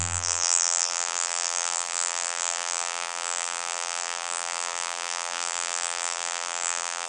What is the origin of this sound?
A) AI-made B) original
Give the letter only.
A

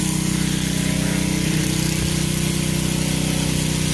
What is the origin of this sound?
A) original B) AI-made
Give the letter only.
A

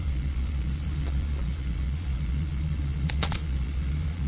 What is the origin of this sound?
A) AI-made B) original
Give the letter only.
A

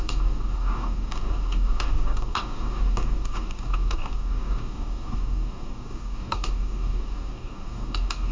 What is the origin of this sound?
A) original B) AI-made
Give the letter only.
B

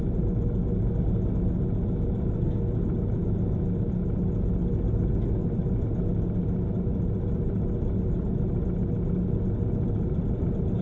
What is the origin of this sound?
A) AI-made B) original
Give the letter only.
B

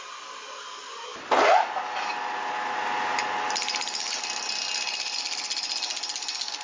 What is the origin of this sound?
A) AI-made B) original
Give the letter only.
B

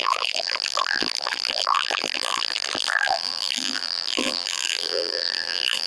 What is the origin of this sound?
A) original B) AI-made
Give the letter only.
B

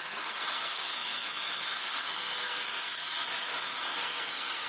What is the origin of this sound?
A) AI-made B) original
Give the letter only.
A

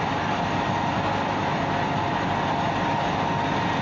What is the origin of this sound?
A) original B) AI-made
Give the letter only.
A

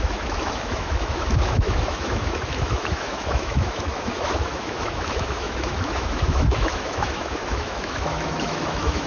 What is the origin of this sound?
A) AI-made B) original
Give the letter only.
A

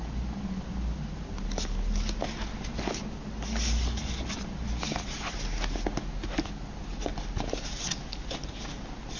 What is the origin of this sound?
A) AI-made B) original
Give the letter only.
B